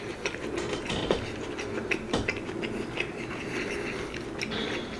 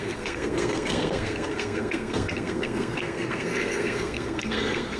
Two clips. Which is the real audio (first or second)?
first